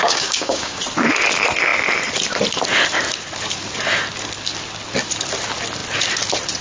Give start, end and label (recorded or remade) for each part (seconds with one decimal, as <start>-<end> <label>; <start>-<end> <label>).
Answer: 0.0-0.8 remade; 0.8-6.6 recorded